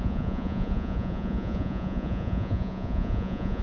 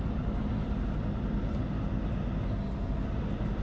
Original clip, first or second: second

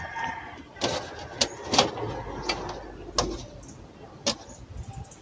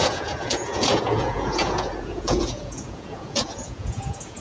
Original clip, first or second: first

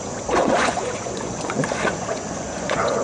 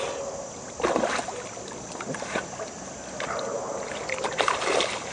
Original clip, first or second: second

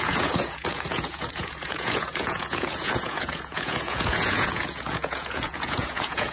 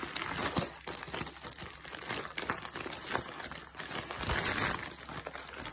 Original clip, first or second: second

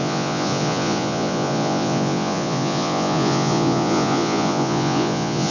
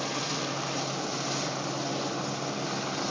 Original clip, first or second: second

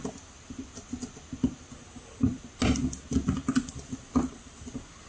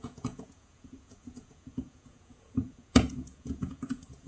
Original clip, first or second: first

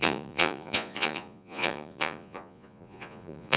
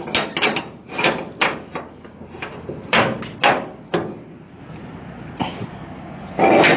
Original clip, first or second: second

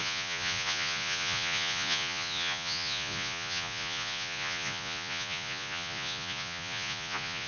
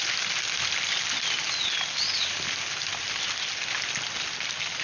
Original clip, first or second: second